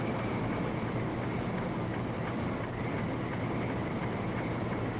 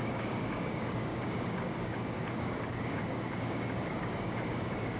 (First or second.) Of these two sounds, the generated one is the second